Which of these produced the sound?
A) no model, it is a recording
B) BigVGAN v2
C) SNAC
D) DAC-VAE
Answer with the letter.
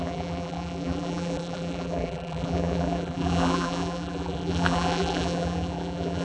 B